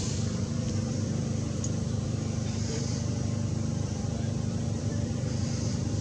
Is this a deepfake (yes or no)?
yes